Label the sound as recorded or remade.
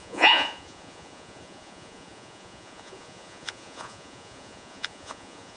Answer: remade